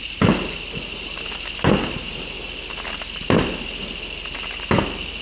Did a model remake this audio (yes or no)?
no